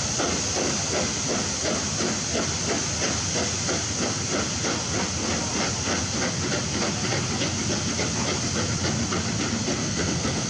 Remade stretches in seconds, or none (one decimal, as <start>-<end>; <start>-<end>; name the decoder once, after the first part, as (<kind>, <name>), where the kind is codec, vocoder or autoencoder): 9.8-10.5 (codec, SNAC)